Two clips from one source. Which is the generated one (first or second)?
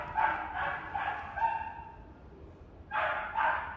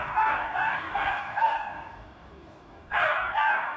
second